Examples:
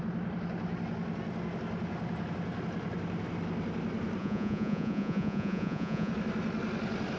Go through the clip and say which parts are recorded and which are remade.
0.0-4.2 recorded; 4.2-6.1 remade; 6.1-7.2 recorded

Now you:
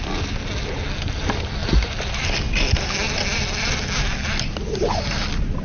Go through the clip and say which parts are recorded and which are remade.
0.0-5.6 recorded

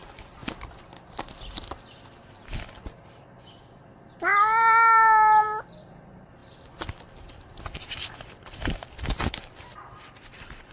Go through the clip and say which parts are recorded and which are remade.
0.0-0.4 remade; 0.4-2.6 recorded; 2.6-4.3 remade; 4.3-5.8 recorded; 5.8-6.4 remade; 6.4-7.7 recorded; 7.7-10.7 remade

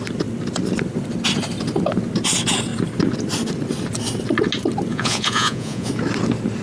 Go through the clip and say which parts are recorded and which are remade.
0.0-4.9 recorded; 4.9-5.9 remade; 5.9-6.6 recorded

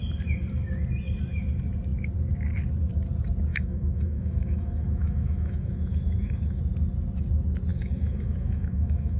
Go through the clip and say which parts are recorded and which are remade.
0.0-3.5 recorded; 3.5-6.6 remade; 6.6-7.7 recorded; 7.7-9.2 remade

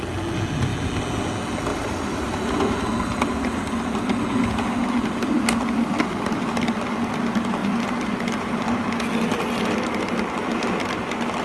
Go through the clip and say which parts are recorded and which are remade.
0.0-1.7 recorded; 1.7-2.4 remade; 2.4-7.6 recorded; 7.6-8.5 remade; 8.5-11.4 recorded